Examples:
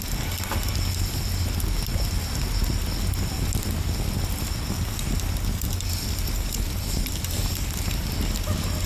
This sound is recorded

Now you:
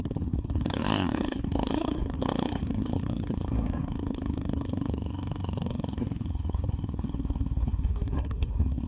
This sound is remade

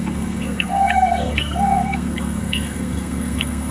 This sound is remade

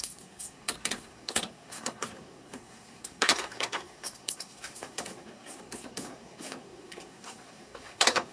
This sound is remade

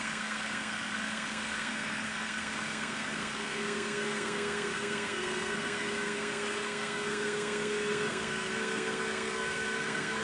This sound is remade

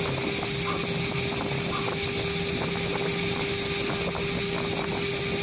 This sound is recorded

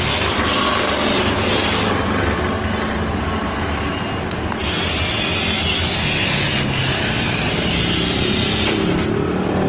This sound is recorded